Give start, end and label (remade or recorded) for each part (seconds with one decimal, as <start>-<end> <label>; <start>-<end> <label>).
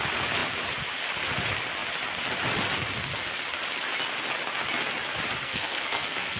0.0-5.4 recorded; 5.4-6.4 remade